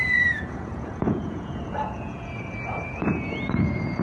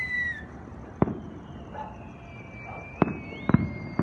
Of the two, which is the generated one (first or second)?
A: first